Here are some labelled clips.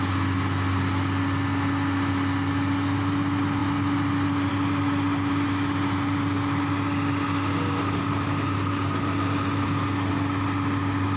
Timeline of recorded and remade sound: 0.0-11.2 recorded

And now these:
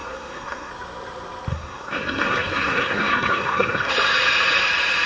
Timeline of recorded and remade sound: 0.0-0.7 remade; 0.7-1.5 recorded; 1.5-3.9 remade; 3.9-5.1 recorded

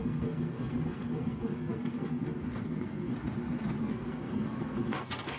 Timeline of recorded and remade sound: 0.0-3.1 remade; 3.1-3.8 recorded; 3.8-5.4 remade

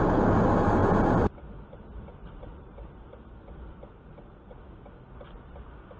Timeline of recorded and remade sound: 0.0-6.0 recorded

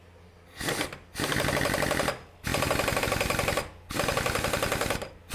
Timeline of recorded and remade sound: 0.0-5.3 recorded

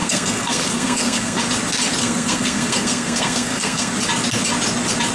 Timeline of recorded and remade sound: 0.0-1.4 remade; 1.4-2.0 recorded; 2.0-3.9 remade; 3.9-5.1 recorded